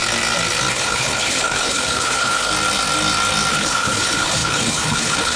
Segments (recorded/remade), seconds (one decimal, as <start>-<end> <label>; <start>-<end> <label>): 0.0-0.7 recorded; 0.7-2.5 remade; 2.5-3.5 recorded; 3.5-5.4 remade